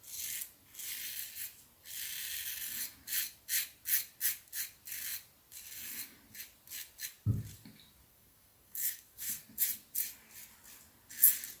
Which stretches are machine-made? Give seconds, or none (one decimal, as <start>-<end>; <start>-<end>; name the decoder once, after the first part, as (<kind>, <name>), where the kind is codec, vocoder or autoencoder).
8.1-9.4 (codec, SNAC)